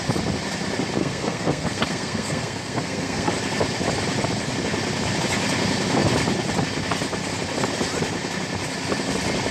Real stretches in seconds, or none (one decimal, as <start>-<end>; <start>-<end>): 0.0-1.0; 3.3-9.5